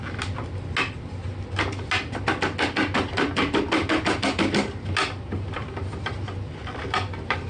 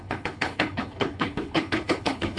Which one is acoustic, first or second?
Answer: first